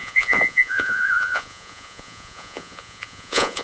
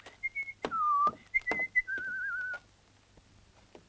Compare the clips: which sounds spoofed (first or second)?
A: first